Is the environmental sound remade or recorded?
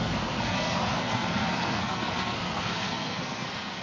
remade